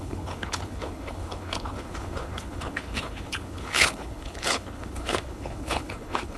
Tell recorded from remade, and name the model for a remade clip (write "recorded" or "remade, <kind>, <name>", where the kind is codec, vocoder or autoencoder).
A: remade, codec, HILCodec